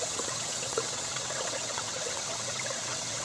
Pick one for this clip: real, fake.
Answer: fake